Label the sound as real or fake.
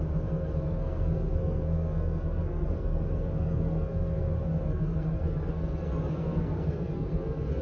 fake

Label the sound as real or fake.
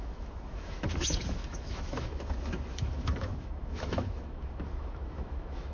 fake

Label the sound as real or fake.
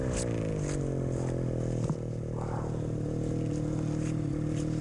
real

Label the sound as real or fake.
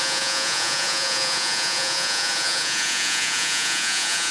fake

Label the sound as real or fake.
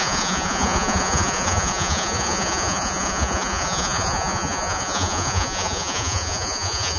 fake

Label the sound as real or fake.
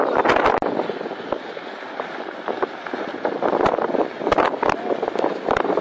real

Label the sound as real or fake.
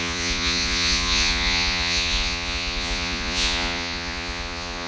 fake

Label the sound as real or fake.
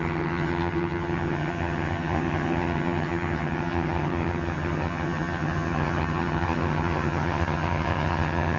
fake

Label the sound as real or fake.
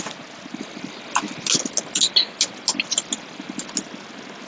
real